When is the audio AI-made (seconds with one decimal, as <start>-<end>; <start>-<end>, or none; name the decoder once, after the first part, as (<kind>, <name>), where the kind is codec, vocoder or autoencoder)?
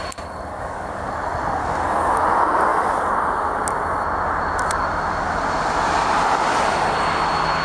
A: 0.5-1.1 (codec, DAC); 1.6-2.2